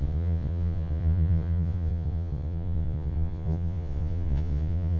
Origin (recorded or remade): remade